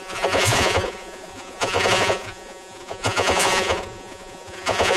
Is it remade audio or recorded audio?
remade